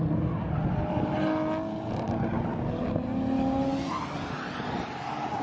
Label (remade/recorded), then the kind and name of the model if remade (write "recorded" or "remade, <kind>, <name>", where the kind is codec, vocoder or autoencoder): recorded